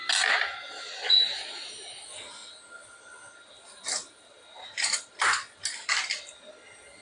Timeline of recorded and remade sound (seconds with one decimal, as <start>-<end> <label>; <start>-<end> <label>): 0.0-7.0 recorded